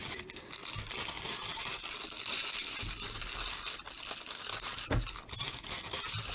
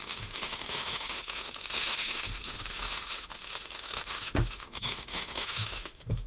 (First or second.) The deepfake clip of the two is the second